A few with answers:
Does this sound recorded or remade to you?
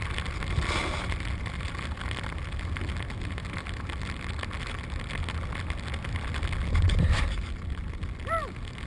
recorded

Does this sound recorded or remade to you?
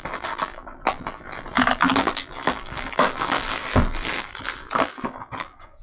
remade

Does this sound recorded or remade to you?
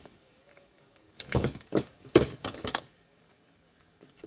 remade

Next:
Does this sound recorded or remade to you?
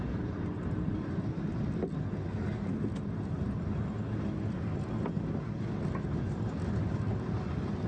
recorded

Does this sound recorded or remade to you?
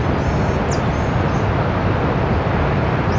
recorded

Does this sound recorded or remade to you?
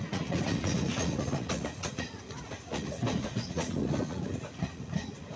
remade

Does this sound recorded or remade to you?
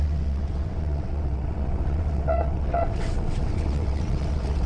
remade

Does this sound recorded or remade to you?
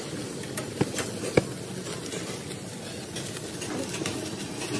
recorded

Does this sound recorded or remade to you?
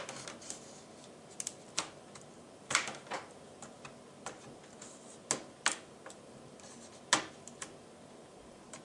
recorded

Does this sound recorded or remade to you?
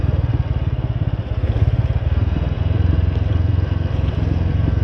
recorded